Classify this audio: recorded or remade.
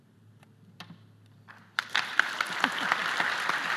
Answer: remade